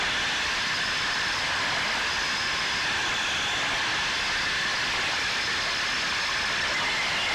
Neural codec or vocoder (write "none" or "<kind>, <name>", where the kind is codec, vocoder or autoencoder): none